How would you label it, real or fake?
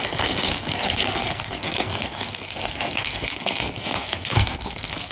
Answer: fake